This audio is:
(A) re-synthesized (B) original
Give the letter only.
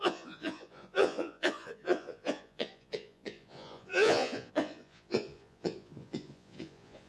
A